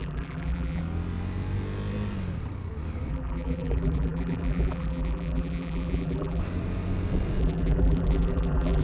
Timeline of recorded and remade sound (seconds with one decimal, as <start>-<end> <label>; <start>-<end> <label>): 0.0-0.8 remade; 0.8-3.1 recorded; 3.1-6.4 remade; 6.4-7.4 recorded; 7.4-8.8 remade